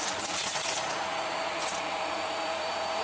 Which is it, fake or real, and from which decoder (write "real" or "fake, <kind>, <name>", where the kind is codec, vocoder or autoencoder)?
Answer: fake, vocoder, Vocos